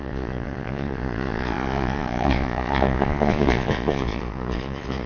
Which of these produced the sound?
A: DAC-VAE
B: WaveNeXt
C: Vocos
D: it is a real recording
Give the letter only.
C